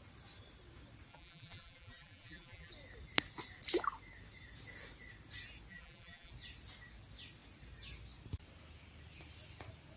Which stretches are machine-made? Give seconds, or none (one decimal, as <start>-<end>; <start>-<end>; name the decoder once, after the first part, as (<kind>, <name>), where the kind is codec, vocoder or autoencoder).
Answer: 1.1-2.7 (vocoder, BigVGAN v2); 5.7-6.3